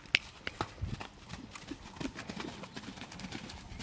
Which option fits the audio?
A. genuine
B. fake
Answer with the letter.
A